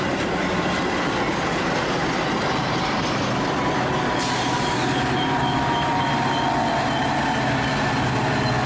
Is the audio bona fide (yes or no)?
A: yes